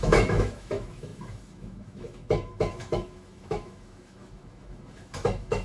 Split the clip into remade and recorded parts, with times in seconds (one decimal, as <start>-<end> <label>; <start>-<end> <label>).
0.0-5.6 remade